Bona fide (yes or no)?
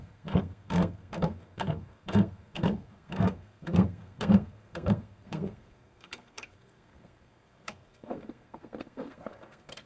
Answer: no